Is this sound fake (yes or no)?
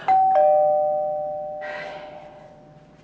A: no